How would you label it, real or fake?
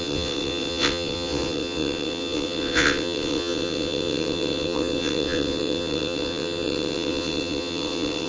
fake